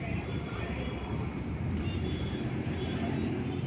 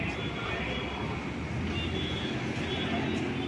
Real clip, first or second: second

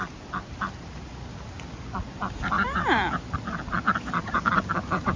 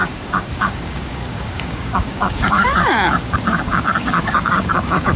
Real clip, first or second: first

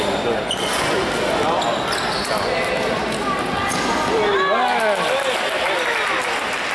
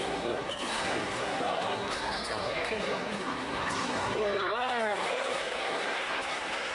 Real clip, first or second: first